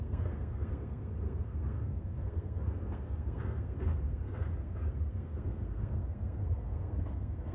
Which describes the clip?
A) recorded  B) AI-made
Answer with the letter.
B